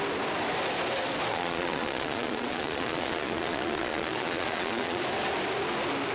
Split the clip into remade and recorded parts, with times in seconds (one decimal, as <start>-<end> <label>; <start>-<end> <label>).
0.0-1.3 recorded; 1.3-5.0 remade; 5.0-6.1 recorded